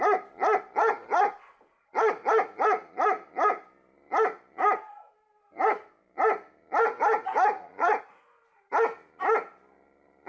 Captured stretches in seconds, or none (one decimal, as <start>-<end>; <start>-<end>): 0.0-7.7; 8.4-10.3